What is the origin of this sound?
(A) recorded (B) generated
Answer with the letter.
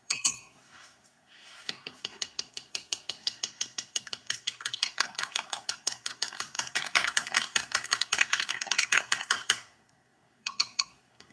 B